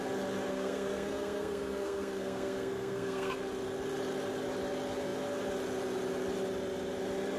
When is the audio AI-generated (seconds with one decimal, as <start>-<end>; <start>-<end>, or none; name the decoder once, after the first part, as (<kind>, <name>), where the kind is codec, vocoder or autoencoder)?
0.5-3.4 (codec, SNAC)